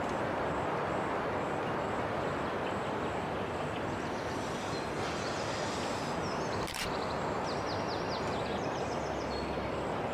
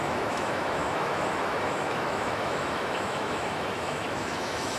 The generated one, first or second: second